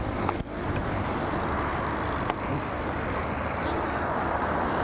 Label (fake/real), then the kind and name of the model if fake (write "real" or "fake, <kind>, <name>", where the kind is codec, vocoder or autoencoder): fake, vocoder, BigVGAN v2